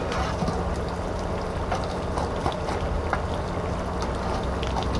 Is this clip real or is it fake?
real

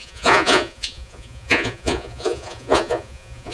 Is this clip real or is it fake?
fake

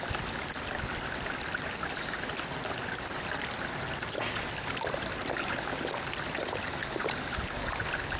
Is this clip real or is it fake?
real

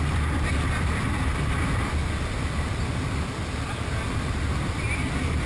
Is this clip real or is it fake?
real